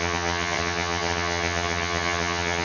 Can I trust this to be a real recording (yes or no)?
no